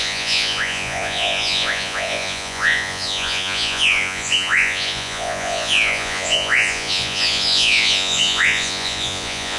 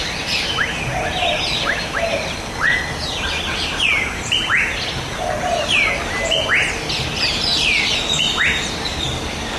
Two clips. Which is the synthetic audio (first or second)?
first